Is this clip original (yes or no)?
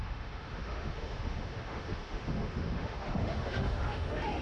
no